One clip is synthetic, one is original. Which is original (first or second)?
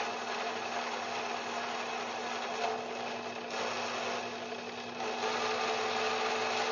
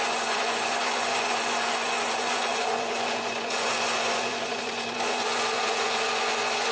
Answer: first